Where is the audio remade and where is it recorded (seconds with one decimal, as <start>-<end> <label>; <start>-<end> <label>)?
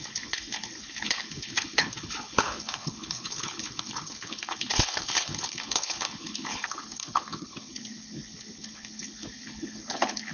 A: 0.0-10.3 remade